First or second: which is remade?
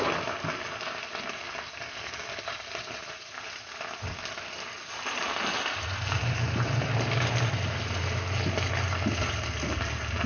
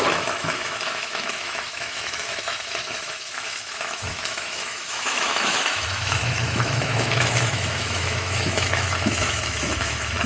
second